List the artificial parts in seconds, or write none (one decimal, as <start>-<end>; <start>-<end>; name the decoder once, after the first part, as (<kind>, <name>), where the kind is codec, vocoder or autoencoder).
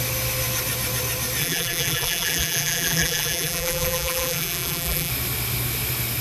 1.4-5.1 (vocoder, BigVGAN v2)